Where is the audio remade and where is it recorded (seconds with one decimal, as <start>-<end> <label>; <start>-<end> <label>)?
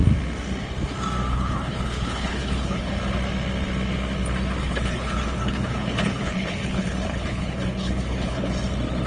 0.0-1.3 recorded; 1.3-2.9 remade; 2.9-4.6 recorded; 4.6-8.5 remade; 8.5-9.1 recorded